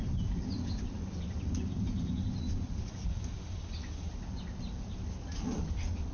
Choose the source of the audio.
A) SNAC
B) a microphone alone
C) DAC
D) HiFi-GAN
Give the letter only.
B